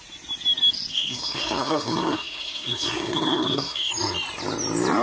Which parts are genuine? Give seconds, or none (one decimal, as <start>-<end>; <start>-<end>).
0.0-0.9; 3.9-5.0